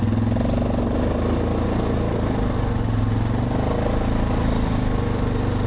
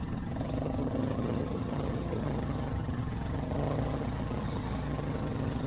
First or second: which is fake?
second